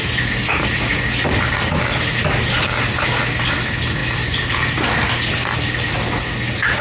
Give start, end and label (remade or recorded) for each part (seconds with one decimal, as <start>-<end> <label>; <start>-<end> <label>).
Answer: 0.0-6.8 recorded